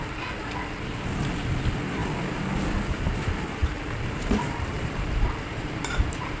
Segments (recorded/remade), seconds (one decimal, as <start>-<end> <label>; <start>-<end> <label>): 0.0-3.6 recorded; 3.6-6.4 remade